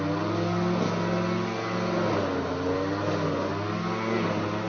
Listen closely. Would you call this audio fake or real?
real